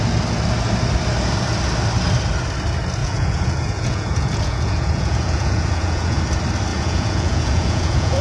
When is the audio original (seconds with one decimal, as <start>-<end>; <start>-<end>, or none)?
0.0-3.0; 6.2-6.7